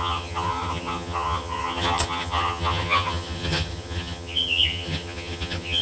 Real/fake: fake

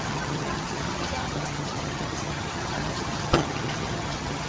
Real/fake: fake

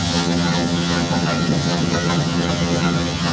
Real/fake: fake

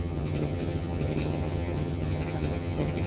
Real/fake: fake